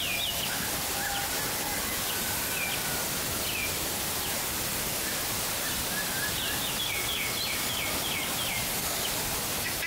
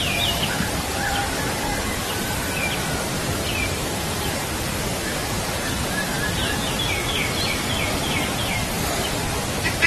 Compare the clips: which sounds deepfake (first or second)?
second